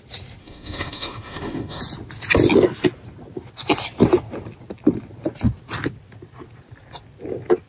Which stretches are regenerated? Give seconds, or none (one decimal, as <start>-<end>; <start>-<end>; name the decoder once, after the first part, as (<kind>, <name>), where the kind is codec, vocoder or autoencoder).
0.4-1.8 (autoencoder, DAC-VAE)